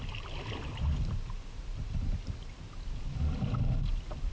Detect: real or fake real